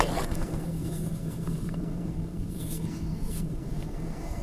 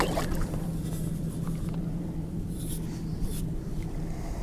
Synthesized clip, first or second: first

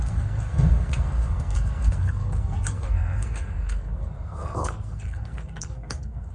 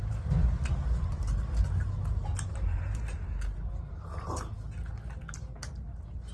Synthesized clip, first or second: first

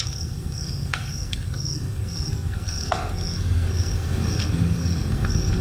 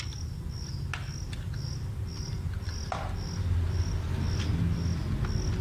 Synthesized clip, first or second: first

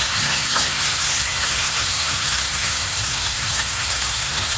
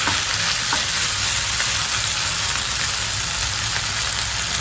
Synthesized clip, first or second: first